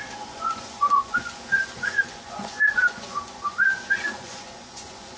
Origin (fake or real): fake